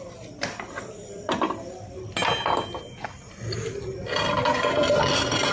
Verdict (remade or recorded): recorded